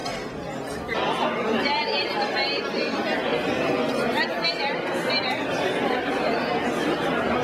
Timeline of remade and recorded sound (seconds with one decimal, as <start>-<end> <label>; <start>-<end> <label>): 0.0-1.6 recorded; 1.6-3.3 remade; 3.3-4.6 recorded; 4.6-7.4 remade